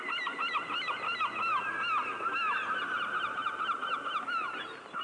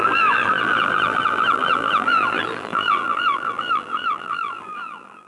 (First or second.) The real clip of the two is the first